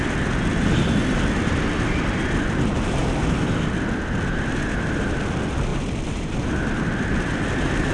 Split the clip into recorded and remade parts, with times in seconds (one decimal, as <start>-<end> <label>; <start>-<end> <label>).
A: 0.0-5.7 recorded; 5.7-7.9 remade